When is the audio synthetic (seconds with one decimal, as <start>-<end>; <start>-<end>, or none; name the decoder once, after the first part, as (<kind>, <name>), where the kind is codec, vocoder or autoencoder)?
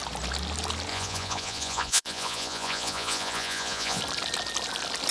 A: 0.9-4.0 (vocoder, Vocos)